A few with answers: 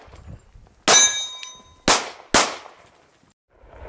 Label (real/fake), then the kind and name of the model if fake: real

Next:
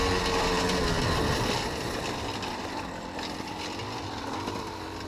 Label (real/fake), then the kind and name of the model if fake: real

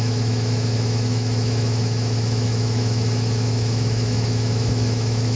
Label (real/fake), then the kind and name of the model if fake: fake, autoencoder, DAC-VAE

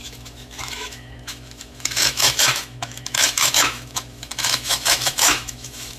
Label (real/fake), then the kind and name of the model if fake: fake, autoencoder, DAC-VAE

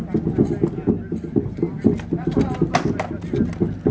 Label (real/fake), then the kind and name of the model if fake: real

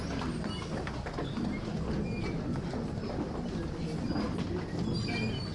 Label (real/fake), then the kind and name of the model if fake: real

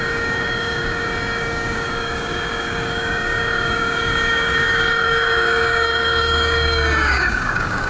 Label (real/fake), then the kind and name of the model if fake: fake, codec, DAC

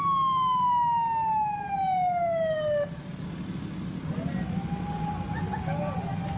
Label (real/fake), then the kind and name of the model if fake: real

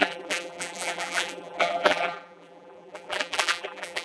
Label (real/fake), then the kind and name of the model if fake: fake, vocoder, BigVGAN v2